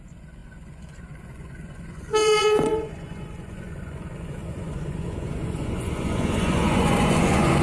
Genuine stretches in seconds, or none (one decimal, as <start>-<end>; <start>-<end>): none